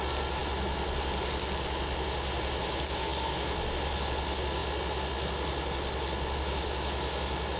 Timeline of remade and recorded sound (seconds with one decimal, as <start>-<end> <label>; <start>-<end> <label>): 0.0-7.6 recorded